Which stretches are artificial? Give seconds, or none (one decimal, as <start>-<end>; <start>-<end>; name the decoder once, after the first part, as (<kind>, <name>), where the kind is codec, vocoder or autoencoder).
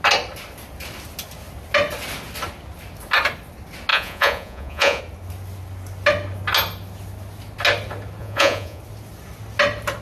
3.9-5.0 (vocoder, Vocos); 8.2-8.8